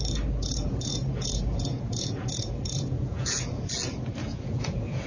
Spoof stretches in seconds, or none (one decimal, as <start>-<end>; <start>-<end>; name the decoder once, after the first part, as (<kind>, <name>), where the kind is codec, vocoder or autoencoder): 0.4-3.5 (vocoder, Vocos); 4.2-5.1